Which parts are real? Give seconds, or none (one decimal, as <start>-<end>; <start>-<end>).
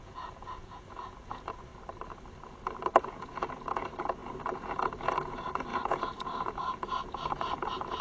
1.7-3.0